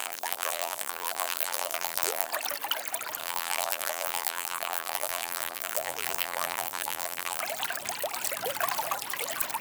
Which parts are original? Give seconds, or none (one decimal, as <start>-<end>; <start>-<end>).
2.3-3.2; 7.4-9.6